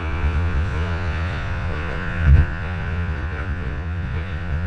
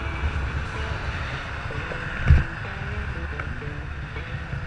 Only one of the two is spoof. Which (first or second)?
first